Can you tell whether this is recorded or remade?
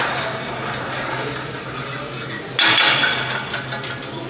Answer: recorded